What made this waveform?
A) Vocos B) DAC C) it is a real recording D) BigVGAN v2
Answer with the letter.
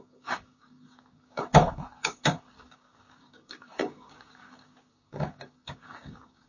B